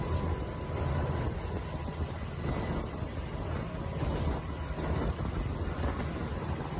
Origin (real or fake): real